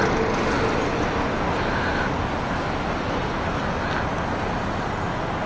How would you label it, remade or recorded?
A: recorded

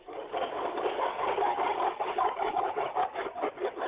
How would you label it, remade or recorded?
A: remade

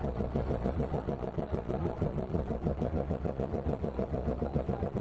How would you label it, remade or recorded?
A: remade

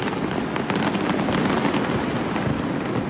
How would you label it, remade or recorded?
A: recorded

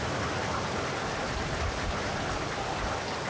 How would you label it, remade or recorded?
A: recorded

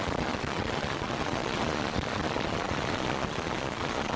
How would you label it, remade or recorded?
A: remade